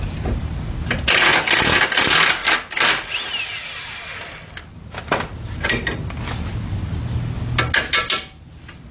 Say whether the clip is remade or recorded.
recorded